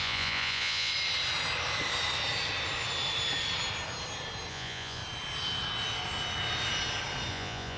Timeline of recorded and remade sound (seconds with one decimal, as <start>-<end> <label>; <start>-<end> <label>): 0.0-0.9 remade; 0.9-4.5 recorded; 4.5-5.0 remade; 5.0-7.3 recorded; 7.3-7.8 remade